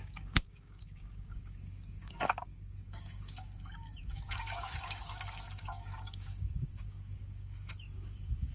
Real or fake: fake